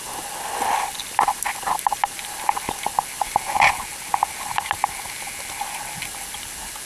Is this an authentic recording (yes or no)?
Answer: yes